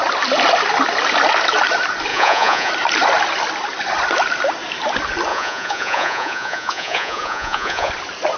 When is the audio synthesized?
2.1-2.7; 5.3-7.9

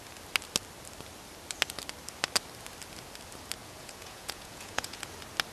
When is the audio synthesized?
3.6-5.0

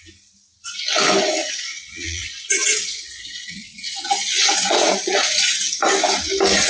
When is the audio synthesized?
1.4-5.4

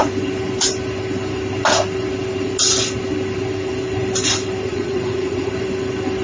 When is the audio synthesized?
4.7-5.5

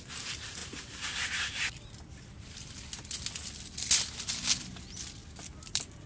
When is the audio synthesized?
none

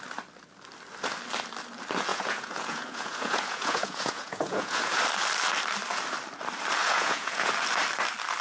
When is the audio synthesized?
2.1-5.0; 6.8-7.5

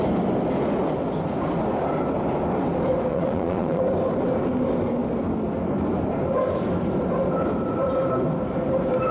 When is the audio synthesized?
3.1-3.8

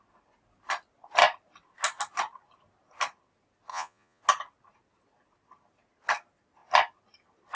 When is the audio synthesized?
3.7-4.2